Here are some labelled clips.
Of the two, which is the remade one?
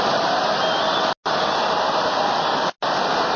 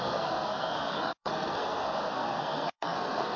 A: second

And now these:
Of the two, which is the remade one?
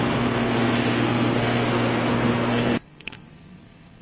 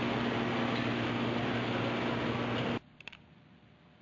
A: first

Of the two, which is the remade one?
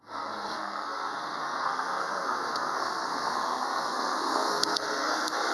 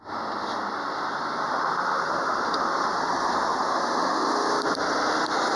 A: first